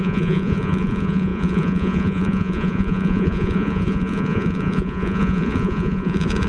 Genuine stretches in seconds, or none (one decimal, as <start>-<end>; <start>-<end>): none